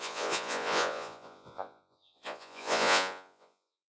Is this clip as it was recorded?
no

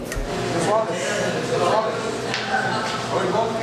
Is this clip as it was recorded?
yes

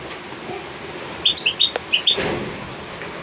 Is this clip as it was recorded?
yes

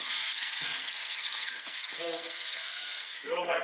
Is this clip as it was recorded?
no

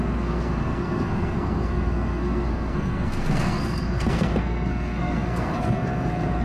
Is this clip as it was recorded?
no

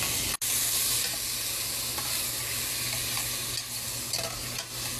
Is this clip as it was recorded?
yes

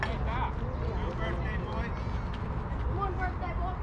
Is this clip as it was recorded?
yes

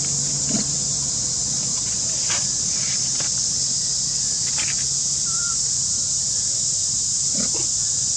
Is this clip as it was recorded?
yes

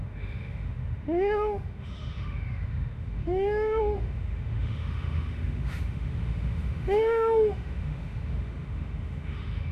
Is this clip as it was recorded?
no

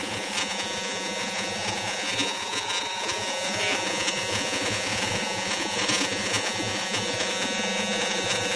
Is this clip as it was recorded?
no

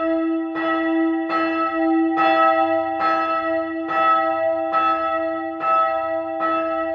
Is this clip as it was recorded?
yes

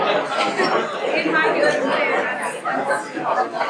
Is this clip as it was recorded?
yes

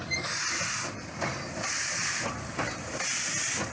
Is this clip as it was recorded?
yes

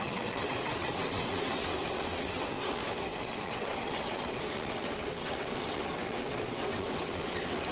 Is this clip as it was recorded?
no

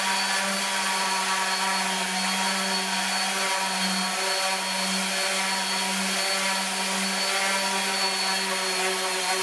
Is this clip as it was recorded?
yes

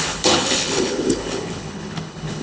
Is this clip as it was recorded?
no